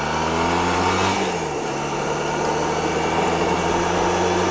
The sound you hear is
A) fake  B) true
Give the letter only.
B